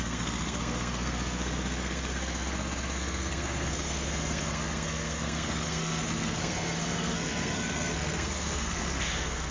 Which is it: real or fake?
fake